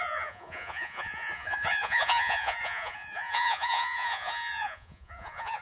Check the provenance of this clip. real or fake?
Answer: fake